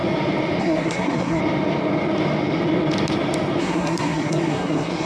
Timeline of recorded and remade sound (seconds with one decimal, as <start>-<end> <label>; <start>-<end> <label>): 0.0-0.6 recorded; 0.6-1.4 remade; 1.4-3.6 recorded; 3.6-5.1 remade